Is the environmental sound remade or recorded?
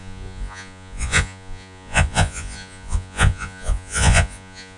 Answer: remade